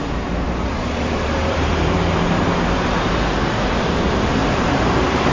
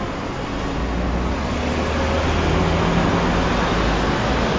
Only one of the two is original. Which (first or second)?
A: second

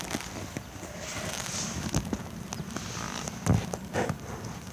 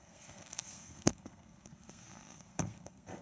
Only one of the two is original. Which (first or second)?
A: first